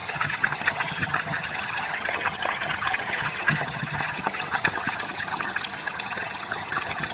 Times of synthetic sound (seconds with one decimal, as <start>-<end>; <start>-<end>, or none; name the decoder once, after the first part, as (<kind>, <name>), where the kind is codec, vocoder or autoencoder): 0.0-7.1 (vocoder, HiFi-GAN)

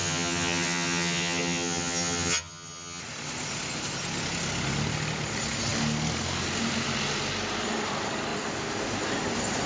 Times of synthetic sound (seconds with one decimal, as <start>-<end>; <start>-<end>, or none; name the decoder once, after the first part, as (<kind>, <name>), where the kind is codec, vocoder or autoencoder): 0.0-3.0 (vocoder, HiFi-GAN)